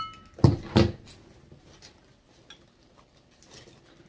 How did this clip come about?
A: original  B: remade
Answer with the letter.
A